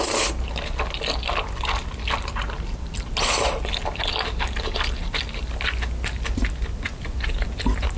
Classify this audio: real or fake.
real